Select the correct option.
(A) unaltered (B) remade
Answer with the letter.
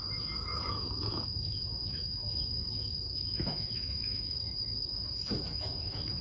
B